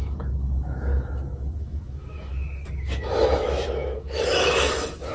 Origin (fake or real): fake